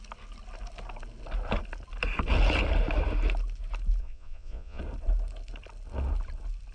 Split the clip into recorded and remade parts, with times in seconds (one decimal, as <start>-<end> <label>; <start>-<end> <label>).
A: 0.0-4.0 recorded; 4.0-4.8 remade; 4.8-6.7 recorded